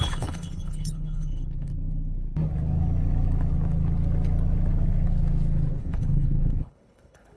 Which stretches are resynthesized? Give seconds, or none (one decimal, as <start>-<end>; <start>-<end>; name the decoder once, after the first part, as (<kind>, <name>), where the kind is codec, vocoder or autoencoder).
0.0-1.7 (codec, HILCodec); 5.8-7.4